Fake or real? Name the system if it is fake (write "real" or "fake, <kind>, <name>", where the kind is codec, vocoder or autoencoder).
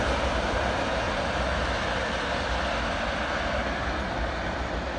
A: real